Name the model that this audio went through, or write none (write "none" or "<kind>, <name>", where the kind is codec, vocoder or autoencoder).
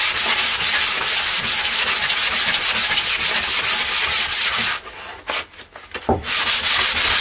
none